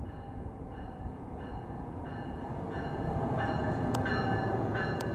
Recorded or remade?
remade